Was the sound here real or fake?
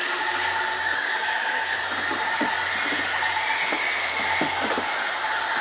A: real